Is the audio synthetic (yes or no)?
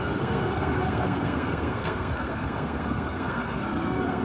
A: yes